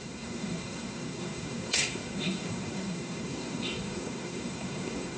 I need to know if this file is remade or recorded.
remade